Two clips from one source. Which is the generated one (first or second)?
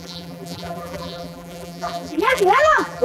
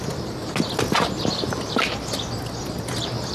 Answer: first